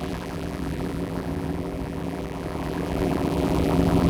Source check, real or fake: fake